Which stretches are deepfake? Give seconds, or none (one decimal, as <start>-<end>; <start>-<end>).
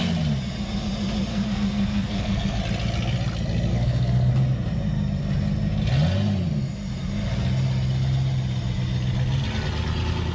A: 1.3-2.6; 3.7-4.3